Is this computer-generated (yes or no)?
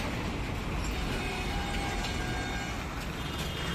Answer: no